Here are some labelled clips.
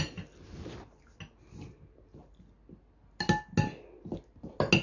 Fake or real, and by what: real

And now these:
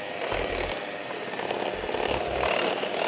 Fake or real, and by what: real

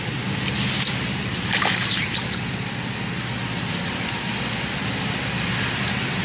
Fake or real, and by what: real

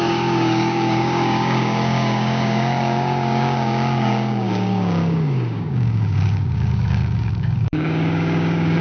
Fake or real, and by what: fake, codec, DAC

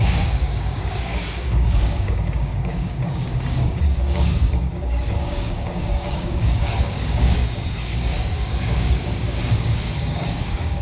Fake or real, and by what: fake, codec, DAC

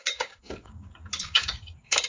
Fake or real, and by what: fake, codec, DAC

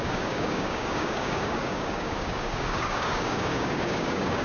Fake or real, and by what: fake, codec, DAC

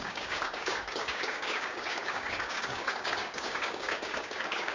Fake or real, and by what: fake, codec, DAC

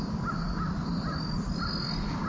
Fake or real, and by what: real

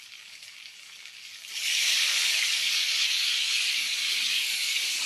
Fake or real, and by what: fake, codec, DAC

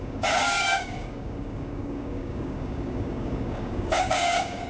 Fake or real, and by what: fake, codec, DAC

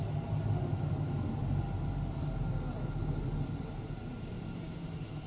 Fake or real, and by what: real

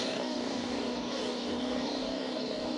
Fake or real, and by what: fake, codec, DAC